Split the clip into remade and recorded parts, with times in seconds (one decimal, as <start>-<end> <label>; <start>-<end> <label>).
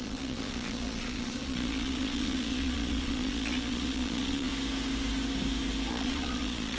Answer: 0.0-4.5 remade; 4.5-5.9 recorded; 5.9-6.8 remade